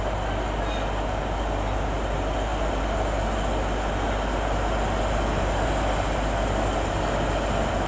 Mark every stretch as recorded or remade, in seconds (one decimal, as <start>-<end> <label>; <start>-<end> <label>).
0.0-7.9 recorded